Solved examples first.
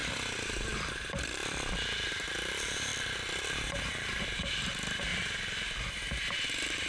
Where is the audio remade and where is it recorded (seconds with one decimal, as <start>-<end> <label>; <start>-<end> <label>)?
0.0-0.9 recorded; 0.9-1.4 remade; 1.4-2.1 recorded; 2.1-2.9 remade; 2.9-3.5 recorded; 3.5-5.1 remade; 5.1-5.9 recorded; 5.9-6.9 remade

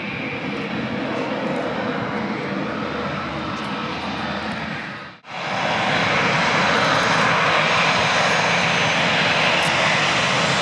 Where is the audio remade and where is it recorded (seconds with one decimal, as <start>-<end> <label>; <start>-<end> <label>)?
0.0-2.6 recorded; 2.6-3.3 remade; 3.3-10.6 recorded

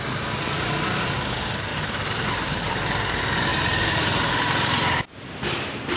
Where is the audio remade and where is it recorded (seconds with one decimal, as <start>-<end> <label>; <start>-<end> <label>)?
0.0-1.7 recorded; 1.7-2.7 remade; 2.7-3.5 recorded; 3.5-4.2 remade; 4.2-6.0 recorded

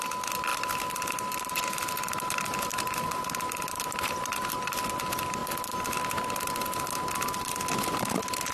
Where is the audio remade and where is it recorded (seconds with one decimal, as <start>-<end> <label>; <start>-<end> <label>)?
0.0-2.7 recorded; 2.7-4.8 remade; 4.8-8.5 recorded

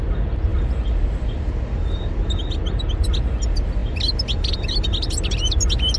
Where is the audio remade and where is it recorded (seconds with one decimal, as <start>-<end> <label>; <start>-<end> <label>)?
0.0-0.5 recorded; 0.5-1.5 remade; 1.5-6.0 recorded